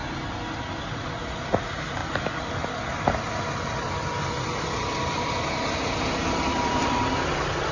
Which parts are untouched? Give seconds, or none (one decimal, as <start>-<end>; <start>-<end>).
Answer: 0.0-6.2; 7.0-7.7